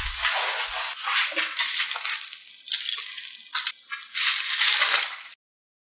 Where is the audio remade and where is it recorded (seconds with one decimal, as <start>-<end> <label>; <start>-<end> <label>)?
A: 0.0-5.9 recorded